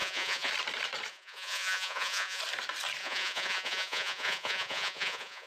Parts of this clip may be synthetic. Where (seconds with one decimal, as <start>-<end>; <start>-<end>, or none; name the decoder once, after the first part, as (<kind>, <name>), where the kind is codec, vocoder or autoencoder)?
0.0-0.5 (vocoder, Vocos); 1.1-2.4; 3.0-5.5